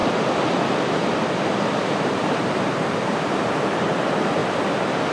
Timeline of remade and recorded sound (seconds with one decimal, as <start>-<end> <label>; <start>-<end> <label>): 0.0-1.8 recorded; 1.8-5.1 remade